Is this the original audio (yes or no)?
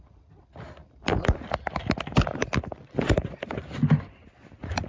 yes